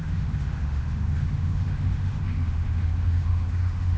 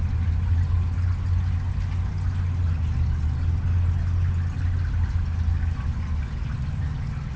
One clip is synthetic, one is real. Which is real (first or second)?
second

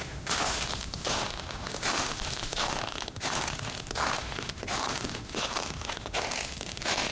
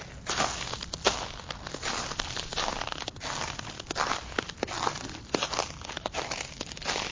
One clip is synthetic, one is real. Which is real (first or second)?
second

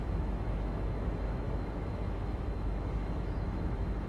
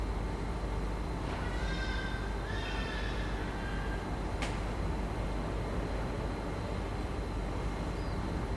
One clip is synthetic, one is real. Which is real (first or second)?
second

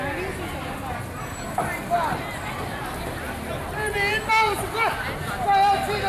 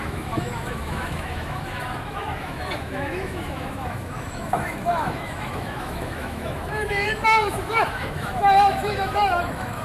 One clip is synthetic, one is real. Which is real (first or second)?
first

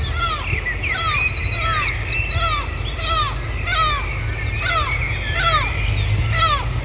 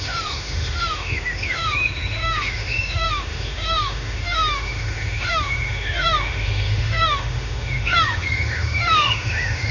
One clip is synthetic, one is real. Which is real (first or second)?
first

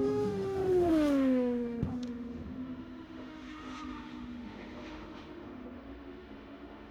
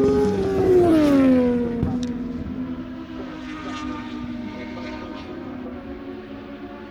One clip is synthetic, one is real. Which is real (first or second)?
second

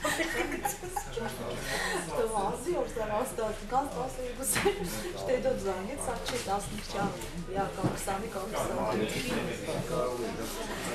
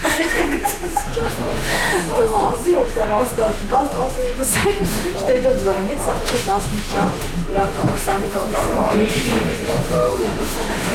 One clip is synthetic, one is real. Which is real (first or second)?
first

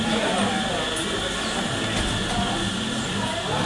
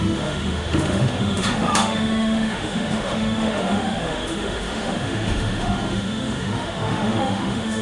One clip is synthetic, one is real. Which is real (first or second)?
first